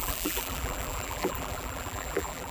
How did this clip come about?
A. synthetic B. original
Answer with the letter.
A